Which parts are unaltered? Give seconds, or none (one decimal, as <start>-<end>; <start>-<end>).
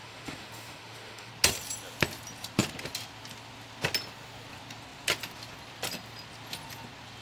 1.3-7.2